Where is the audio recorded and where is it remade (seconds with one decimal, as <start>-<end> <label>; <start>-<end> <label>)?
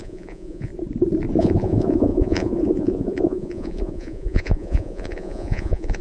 0.0-0.7 remade; 0.7-1.4 recorded; 1.4-6.0 remade